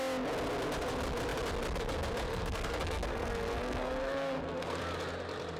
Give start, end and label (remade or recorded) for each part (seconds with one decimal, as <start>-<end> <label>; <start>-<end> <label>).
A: 0.0-2.3 recorded; 2.3-4.8 remade; 4.8-5.6 recorded